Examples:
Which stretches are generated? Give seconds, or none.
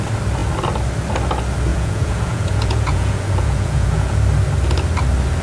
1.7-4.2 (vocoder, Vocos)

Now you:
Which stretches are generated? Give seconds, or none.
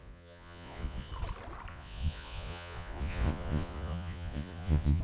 0.0-1.1 (vocoder, Vocos); 1.7-5.0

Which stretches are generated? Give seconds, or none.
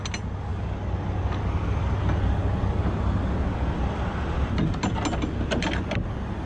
none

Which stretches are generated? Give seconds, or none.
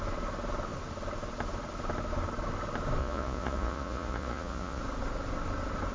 3.0-4.8 (vocoder, Vocos)